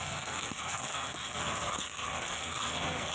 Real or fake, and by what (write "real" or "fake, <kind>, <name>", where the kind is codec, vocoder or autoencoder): fake, codec, SNAC